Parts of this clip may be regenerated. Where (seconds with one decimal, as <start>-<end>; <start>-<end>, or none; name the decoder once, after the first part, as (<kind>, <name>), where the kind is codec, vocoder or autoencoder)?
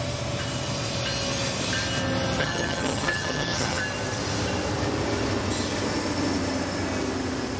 2.4-3.8 (vocoder, HiFi-GAN)